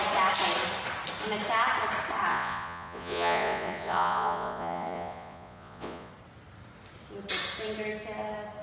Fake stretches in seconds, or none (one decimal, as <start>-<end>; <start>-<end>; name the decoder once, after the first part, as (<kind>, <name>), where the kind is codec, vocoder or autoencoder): 2.3-6.1 (vocoder, Vocos)